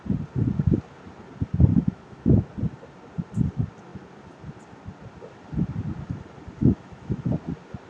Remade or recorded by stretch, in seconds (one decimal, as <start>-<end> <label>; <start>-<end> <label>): 0.0-1.7 recorded; 1.7-2.5 remade; 2.5-6.6 recorded; 6.6-7.2 remade; 7.2-7.9 recorded